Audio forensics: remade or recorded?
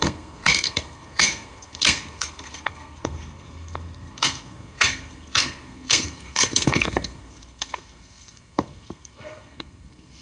remade